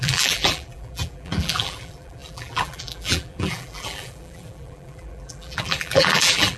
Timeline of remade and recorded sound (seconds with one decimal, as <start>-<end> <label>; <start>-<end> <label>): 0.0-6.6 remade